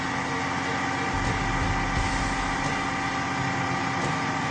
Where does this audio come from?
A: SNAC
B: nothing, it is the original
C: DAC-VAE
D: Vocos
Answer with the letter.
B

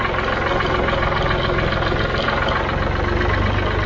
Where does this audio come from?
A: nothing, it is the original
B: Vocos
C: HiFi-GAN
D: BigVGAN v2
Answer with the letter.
A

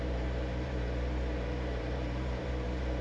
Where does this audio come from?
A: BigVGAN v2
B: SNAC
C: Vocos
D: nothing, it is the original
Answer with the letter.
A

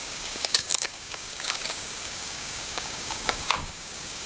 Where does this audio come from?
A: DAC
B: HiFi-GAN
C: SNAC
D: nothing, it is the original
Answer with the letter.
A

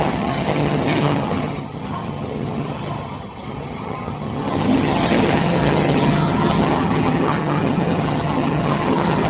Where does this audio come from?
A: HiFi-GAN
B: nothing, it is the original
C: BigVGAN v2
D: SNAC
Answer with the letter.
A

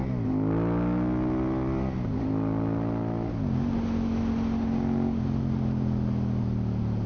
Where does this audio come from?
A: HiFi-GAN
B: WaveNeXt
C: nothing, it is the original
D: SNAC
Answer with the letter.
C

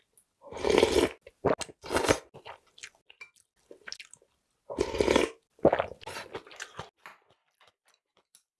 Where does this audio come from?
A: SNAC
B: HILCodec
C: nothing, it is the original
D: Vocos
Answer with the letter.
C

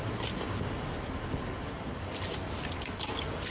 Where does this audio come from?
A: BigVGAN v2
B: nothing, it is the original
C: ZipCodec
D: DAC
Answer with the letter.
B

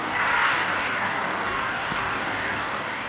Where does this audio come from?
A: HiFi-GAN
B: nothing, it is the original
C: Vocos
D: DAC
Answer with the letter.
D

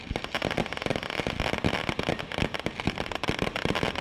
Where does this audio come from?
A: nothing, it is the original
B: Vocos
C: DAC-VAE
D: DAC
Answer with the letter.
A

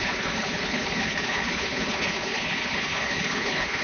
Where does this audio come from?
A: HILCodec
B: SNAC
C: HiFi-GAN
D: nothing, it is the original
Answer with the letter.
A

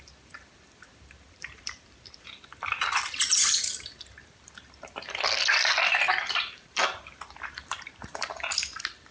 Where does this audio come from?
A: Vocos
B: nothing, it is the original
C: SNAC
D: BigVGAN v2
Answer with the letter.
D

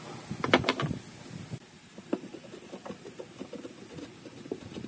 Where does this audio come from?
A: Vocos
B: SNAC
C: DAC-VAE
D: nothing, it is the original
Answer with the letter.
D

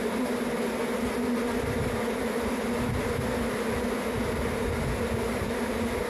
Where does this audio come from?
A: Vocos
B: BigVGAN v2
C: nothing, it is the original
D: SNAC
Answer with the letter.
C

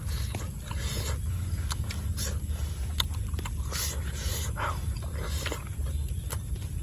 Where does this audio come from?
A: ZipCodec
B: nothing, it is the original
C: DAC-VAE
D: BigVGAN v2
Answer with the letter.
B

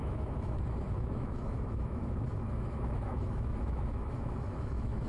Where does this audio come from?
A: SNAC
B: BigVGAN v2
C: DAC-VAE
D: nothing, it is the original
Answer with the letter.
C